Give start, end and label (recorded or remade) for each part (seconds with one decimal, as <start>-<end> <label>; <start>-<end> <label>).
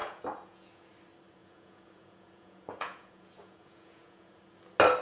0.0-0.9 remade; 0.9-1.4 recorded; 1.4-4.4 remade; 4.4-5.0 recorded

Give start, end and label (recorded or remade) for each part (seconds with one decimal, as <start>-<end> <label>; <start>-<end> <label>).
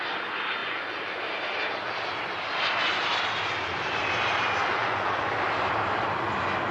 0.0-0.6 recorded; 0.6-1.2 remade; 1.2-4.7 recorded; 4.7-5.3 remade; 5.3-6.7 recorded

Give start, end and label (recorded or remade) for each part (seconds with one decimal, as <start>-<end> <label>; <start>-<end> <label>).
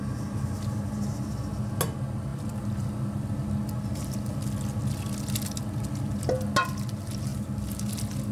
0.0-8.3 recorded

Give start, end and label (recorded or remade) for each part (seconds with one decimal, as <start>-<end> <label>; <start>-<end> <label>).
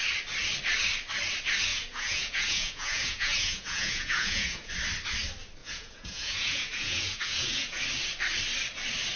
0.0-1.7 recorded; 1.7-4.7 remade; 4.7-5.6 recorded; 5.6-7.8 remade; 7.8-9.2 recorded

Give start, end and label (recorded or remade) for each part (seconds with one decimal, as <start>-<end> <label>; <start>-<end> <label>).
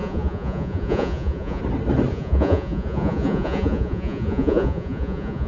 0.0-1.6 remade; 1.6-2.1 recorded; 2.1-5.5 remade